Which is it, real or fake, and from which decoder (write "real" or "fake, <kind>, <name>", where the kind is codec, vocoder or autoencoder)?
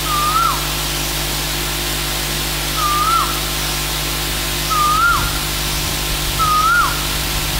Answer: real